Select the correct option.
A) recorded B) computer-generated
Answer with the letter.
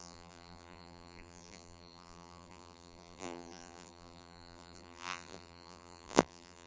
B